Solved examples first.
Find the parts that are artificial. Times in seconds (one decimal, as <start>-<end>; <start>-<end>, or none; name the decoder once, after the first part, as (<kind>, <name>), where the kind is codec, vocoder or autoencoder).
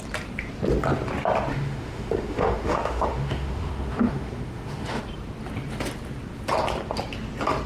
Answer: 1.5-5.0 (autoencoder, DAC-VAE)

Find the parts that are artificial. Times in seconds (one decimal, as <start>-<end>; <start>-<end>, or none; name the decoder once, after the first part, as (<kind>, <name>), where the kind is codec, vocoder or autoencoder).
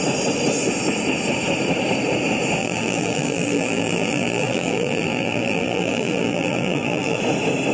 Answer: 2.6-7.2 (vocoder, BigVGAN v2)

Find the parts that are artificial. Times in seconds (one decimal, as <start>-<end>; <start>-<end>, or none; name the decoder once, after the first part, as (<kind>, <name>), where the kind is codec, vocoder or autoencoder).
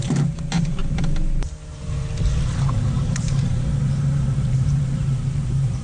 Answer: 0.0-0.8 (vocoder, BigVGAN v2); 2.6-5.8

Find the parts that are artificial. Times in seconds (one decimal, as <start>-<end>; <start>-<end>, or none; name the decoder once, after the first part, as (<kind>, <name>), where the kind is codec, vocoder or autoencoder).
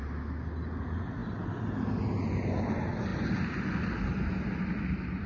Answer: none